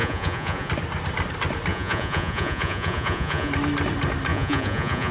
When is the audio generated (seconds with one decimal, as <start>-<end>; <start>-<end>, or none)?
0.0-0.7; 1.7-3.5; 4.3-5.1